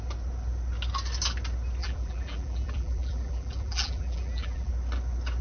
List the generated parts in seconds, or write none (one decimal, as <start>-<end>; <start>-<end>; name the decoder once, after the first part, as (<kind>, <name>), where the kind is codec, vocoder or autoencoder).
1.8-4.7 (vocoder, BigVGAN v2)